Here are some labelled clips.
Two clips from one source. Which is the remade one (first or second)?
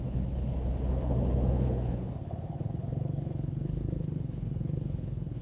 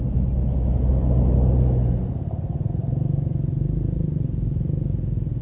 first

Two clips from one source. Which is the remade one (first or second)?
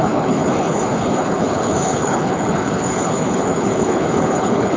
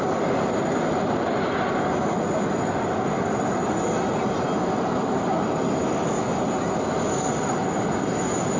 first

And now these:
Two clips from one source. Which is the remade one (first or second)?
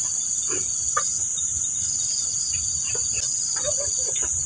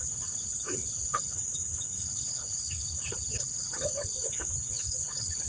second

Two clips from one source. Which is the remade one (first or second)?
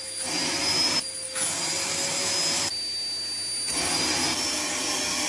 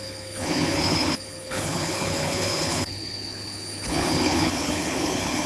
second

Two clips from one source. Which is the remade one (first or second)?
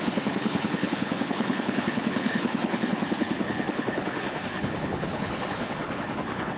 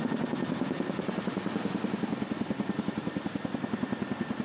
first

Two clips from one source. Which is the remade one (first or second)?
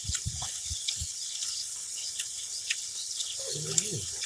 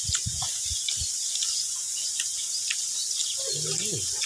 first